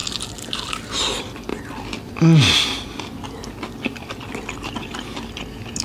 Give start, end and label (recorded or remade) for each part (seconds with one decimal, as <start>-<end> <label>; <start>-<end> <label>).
0.0-5.8 recorded